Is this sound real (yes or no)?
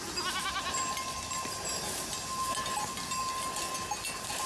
yes